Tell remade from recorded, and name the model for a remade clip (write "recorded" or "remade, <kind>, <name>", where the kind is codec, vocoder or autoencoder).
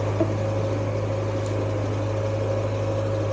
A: recorded